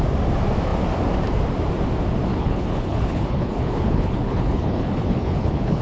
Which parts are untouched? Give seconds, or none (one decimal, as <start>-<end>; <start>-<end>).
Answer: 0.0-2.3